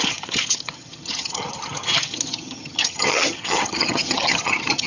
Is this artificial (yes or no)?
yes